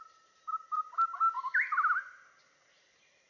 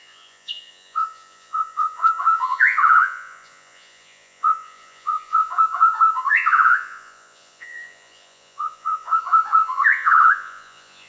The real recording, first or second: first